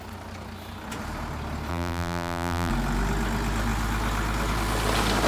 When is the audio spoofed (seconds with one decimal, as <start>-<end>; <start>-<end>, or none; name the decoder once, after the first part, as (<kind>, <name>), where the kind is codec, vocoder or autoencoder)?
1.7-2.7 (vocoder, BigVGAN v2)